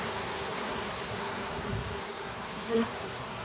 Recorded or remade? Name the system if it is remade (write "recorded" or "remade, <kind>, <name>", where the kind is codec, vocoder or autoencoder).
remade, codec, SNAC